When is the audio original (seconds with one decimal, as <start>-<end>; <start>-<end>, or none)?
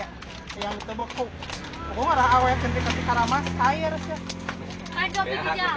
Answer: 0.0-5.8